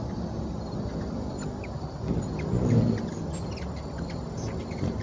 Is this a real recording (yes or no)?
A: yes